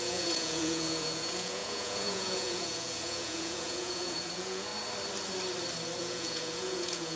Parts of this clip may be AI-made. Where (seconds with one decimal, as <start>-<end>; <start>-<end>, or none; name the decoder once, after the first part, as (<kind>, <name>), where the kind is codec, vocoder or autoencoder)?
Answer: 0.0-4.7 (vocoder, Vocos); 6.0-7.2